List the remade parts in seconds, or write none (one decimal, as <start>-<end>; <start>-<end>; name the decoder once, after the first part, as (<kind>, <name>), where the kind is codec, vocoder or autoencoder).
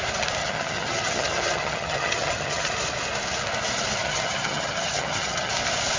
0.4-2.7 (vocoder, HiFi-GAN); 4.0-5.5